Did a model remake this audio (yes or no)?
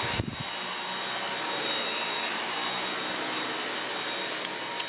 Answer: no